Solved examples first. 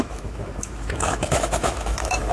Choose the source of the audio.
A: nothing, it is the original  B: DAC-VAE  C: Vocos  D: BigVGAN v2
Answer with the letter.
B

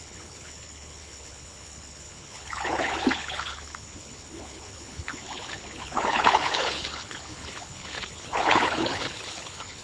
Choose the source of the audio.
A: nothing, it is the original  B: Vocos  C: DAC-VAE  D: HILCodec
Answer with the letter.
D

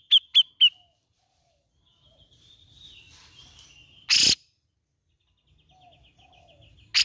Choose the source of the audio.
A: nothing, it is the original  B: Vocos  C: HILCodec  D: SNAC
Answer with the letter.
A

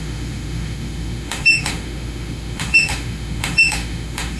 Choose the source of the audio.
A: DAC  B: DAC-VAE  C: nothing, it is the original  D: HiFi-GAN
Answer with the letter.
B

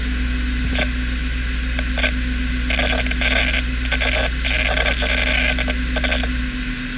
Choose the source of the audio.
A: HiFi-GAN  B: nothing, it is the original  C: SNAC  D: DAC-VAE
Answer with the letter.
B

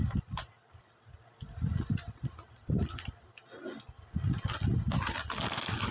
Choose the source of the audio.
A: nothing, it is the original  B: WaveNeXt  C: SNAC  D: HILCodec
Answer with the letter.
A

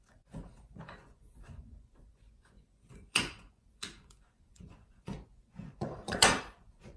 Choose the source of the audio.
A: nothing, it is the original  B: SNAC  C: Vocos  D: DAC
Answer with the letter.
C